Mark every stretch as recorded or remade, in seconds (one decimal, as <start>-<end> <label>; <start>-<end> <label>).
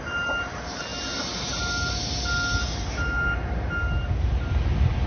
0.0-5.1 recorded